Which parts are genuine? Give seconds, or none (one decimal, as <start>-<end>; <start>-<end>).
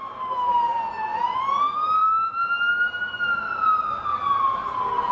0.0-5.1